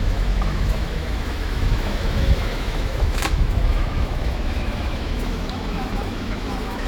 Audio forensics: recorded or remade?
remade